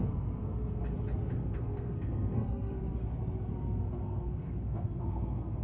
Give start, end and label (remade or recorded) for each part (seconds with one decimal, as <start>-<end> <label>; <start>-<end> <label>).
0.0-0.8 remade; 0.8-1.3 recorded; 1.3-2.8 remade; 2.8-3.8 recorded; 3.8-5.6 remade